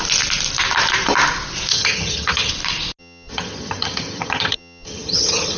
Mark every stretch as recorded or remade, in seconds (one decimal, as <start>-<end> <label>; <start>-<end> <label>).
0.0-1.7 recorded; 1.7-2.5 remade; 2.5-3.0 recorded; 3.0-5.6 remade